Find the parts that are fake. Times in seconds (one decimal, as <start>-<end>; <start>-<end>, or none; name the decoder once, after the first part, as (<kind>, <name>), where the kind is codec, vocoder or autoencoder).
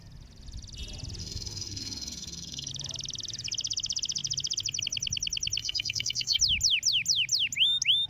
1.2-2.7 (codec, SNAC); 5.6-6.4